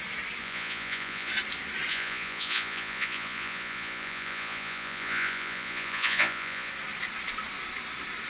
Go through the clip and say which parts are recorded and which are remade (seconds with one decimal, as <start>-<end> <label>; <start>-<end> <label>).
0.0-0.4 recorded; 0.4-1.3 remade; 1.3-1.9 recorded; 1.9-6.7 remade; 6.7-8.3 recorded

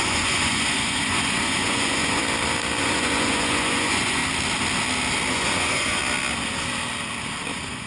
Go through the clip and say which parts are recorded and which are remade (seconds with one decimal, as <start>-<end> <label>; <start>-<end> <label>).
0.0-2.2 remade; 2.2-2.8 recorded; 2.8-4.2 remade; 4.2-5.3 recorded; 5.3-6.0 remade; 6.0-7.5 recorded; 7.5-7.9 remade

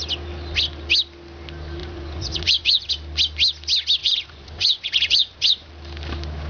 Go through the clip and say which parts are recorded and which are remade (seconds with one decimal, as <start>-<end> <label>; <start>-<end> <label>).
0.0-1.8 recorded; 1.8-2.9 remade; 2.9-4.0 recorded; 4.0-5.7 remade; 5.7-6.5 recorded

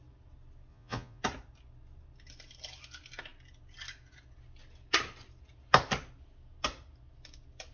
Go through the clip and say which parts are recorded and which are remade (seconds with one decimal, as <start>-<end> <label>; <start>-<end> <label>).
0.0-0.7 recorded; 0.7-1.2 remade; 1.2-7.7 recorded

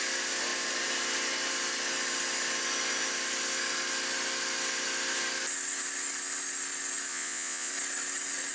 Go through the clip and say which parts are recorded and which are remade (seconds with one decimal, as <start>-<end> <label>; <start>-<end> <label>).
0.0-7.1 recorded; 7.1-7.7 remade; 7.7-8.5 recorded

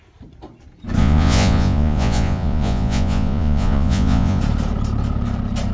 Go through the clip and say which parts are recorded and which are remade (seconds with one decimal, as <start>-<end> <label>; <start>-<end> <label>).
0.0-1.0 recorded; 1.0-4.4 remade; 4.4-5.7 recorded

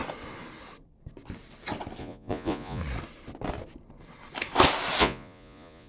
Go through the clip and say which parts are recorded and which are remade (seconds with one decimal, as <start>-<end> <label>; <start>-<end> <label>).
0.0-2.0 recorded; 2.0-2.8 remade; 2.8-5.0 recorded; 5.0-5.9 remade